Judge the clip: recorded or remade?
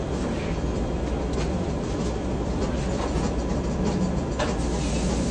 recorded